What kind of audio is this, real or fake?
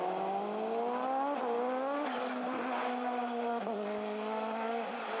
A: real